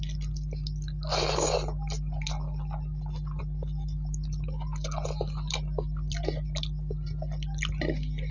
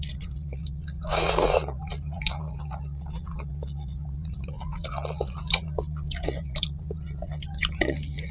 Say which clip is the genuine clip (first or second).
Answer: first